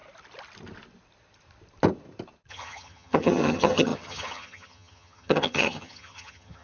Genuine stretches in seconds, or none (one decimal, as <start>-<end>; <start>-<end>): 0.0-2.5